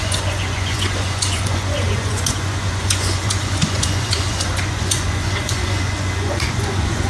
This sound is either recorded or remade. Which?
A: remade